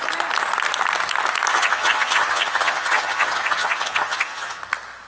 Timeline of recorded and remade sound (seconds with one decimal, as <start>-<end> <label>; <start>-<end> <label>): 0.0-1.5 recorded; 1.5-4.6 remade; 4.6-5.1 recorded